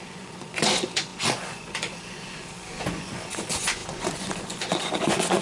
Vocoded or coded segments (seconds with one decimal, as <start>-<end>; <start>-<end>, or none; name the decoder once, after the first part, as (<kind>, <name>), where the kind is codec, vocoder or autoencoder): 0.0-5.4 (vocoder, Vocos)